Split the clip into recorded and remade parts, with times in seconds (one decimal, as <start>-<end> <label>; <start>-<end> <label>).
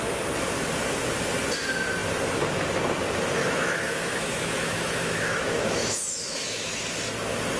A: 0.0-3.4 recorded; 3.4-6.8 remade; 6.8-7.6 recorded